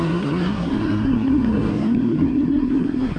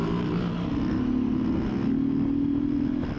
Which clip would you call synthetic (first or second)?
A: first